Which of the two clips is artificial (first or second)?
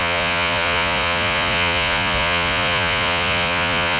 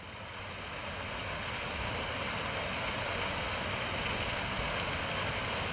first